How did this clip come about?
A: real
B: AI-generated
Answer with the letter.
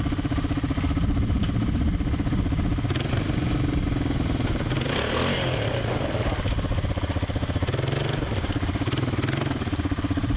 A